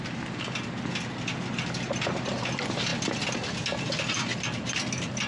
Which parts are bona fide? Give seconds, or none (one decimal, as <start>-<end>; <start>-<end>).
0.0-5.3